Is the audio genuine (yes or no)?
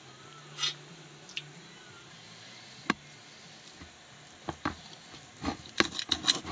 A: yes